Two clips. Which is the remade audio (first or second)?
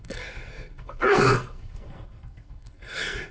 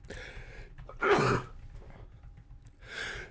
first